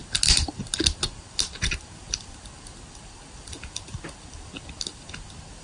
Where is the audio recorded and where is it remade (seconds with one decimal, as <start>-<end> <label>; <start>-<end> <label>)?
0.0-5.6 recorded